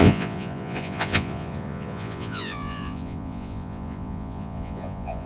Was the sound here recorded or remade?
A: remade